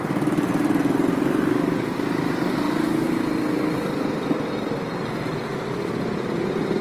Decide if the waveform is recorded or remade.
recorded